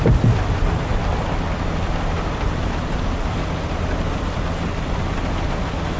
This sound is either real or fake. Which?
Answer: real